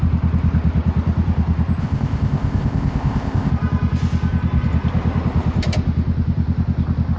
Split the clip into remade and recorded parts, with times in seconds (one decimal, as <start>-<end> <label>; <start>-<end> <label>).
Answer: 0.0-1.8 recorded; 1.8-3.5 remade; 3.5-7.2 recorded

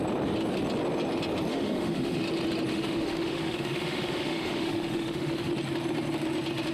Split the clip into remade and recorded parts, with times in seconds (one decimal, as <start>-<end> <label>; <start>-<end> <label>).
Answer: 0.0-1.5 recorded; 1.5-2.2 remade; 2.2-2.7 recorded; 2.7-5.5 remade; 5.5-6.7 recorded

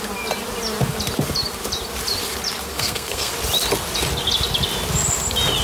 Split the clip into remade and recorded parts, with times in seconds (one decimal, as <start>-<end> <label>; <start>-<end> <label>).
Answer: 0.0-2.7 recorded; 2.7-3.3 remade; 3.3-5.6 recorded

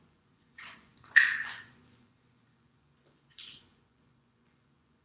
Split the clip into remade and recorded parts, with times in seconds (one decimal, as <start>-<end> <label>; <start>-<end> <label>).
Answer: 0.0-5.0 remade

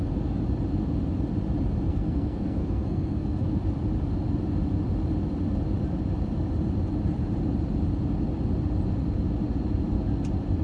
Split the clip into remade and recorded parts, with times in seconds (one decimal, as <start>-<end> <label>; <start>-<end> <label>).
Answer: 0.0-1.9 recorded; 1.9-3.6 remade; 3.6-10.6 recorded

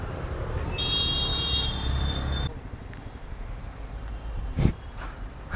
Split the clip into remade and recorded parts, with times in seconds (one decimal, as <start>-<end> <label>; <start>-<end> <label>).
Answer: 0.0-5.6 remade

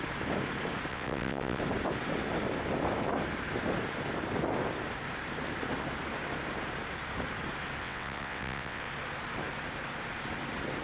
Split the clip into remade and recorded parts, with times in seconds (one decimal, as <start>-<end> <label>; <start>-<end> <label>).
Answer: 0.0-0.9 recorded; 0.9-1.6 remade; 1.6-7.8 recorded; 7.8-8.9 remade; 8.9-10.8 recorded

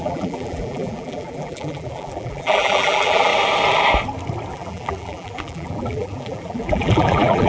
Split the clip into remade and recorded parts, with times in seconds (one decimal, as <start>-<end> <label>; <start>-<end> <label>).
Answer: 0.0-3.3 remade; 3.3-4.5 recorded; 4.5-7.5 remade